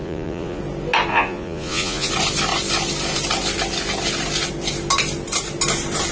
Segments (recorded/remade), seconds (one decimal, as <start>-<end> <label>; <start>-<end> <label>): 0.0-0.6 remade; 0.6-1.1 recorded; 1.1-2.1 remade; 2.1-6.1 recorded